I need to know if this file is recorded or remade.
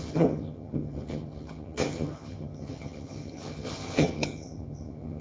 remade